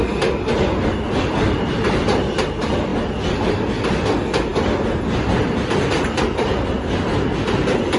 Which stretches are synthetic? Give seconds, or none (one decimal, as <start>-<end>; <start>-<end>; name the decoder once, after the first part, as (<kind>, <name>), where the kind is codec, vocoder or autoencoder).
none